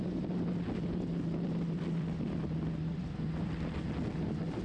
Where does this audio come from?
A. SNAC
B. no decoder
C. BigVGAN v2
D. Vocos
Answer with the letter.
B